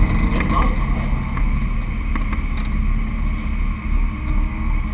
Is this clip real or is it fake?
real